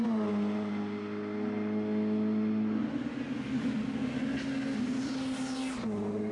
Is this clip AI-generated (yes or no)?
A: no